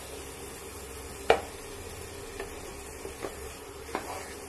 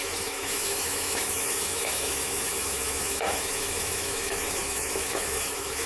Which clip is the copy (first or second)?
second